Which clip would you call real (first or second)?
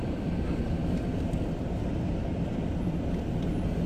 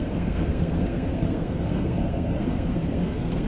first